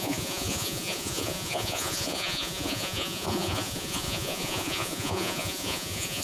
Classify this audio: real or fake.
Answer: fake